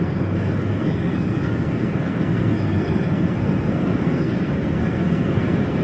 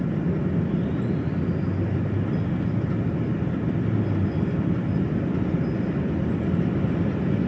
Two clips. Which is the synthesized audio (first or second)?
first